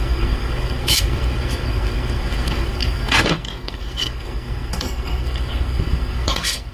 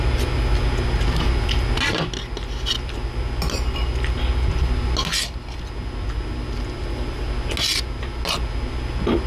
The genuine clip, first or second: second